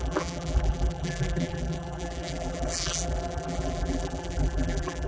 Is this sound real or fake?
fake